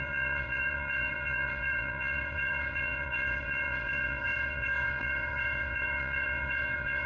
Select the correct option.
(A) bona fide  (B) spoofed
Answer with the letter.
B